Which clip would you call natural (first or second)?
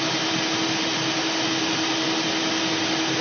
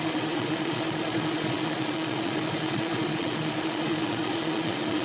first